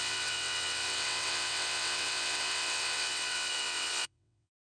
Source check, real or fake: fake